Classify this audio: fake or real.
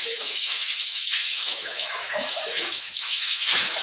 fake